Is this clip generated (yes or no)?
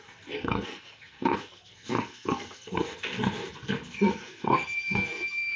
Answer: yes